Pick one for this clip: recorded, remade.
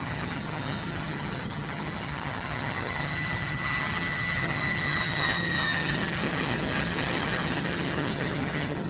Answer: remade